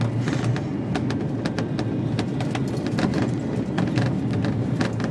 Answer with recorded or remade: recorded